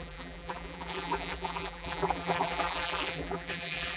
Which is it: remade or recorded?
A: remade